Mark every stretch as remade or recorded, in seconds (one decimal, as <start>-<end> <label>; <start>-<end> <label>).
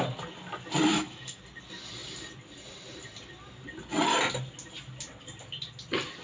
0.0-0.9 recorded; 0.9-1.4 remade; 1.4-6.2 recorded